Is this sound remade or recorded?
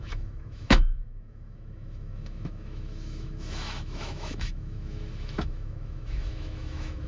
remade